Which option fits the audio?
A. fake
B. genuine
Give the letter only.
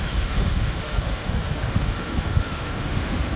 A